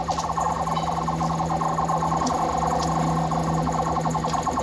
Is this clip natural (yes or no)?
yes